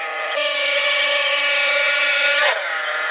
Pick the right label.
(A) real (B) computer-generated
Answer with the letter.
B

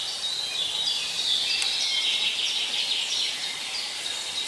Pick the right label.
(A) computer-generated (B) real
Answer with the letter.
B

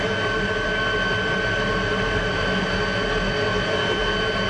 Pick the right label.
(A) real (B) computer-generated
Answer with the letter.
A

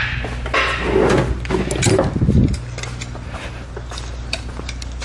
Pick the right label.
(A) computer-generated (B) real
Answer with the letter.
B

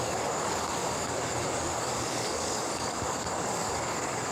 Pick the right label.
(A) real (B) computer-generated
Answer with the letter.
B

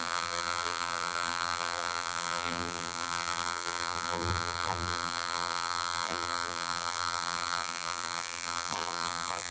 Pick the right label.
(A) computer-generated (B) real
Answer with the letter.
A